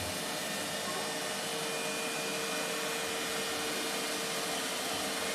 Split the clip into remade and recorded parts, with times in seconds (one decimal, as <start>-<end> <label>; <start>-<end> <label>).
0.0-5.3 recorded